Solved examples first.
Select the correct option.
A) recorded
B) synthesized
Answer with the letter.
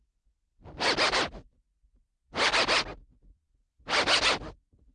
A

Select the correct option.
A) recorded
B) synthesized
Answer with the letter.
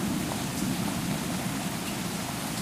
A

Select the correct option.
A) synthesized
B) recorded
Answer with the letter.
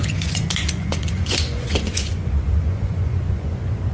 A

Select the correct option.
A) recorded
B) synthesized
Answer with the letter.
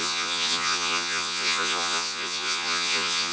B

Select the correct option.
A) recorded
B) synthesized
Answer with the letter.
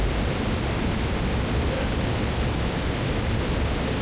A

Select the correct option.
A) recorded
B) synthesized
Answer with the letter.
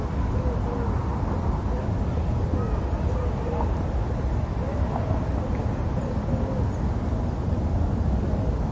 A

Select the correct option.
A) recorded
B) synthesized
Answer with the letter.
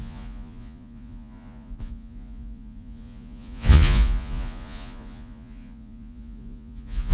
B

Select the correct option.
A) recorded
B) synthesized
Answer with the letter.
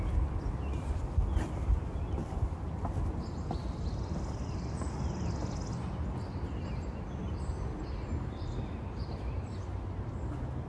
A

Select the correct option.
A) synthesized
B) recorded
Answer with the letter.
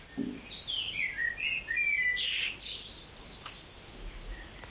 B